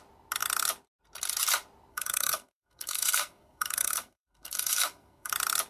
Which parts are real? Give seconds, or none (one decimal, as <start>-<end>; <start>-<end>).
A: 0.0-1.9; 5.3-5.7